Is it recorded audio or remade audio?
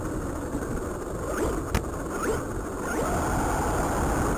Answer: recorded